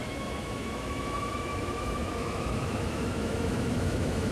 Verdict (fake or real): fake